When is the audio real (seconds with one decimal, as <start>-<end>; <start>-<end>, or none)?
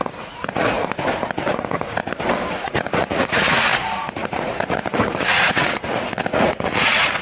0.8-1.5; 2.0-2.5